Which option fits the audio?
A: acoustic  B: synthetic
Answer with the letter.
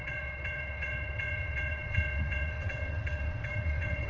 B